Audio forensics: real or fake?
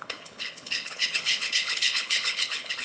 fake